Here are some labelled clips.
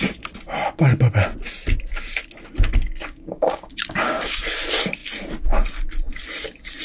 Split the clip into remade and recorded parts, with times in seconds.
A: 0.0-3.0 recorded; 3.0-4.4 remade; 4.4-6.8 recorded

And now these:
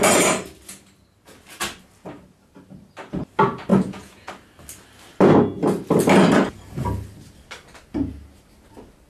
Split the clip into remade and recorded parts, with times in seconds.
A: 0.0-3.7 recorded; 3.7-4.3 remade; 4.3-9.1 recorded